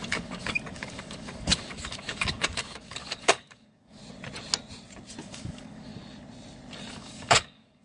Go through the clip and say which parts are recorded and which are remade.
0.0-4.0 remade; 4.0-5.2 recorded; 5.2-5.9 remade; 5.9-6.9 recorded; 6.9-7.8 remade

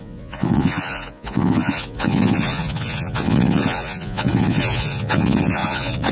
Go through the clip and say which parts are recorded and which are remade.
0.0-6.1 remade

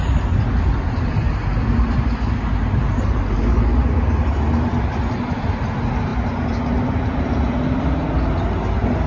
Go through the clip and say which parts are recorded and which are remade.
0.0-9.1 recorded

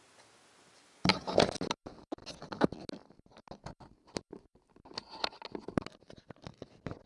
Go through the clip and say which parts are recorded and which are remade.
0.0-7.1 recorded

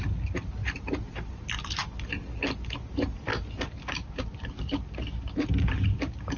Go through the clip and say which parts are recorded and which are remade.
0.0-0.6 recorded; 0.6-1.1 remade; 1.1-3.3 recorded; 3.3-6.4 remade